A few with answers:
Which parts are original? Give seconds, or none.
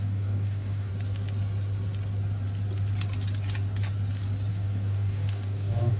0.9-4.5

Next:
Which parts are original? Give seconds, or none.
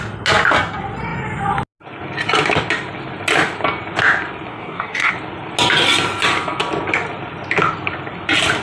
0.0-4.5; 5.1-8.6